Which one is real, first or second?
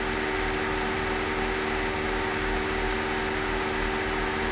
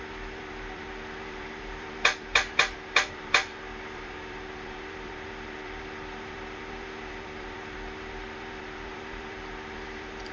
first